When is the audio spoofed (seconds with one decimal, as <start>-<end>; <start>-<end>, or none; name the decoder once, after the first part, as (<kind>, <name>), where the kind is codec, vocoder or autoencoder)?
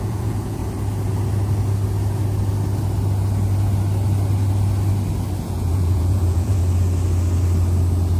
0.0-0.6 (vocoder, Vocos); 5.4-6.6